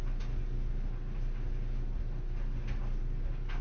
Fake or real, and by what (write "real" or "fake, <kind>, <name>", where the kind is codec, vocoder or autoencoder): real